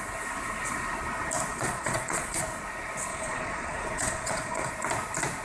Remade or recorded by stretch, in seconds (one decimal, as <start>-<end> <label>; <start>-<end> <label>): 0.0-1.5 recorded; 1.5-2.4 remade; 2.4-3.1 recorded; 3.1-4.7 remade; 4.7-5.4 recorded